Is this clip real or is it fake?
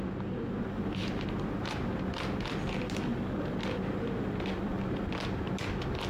real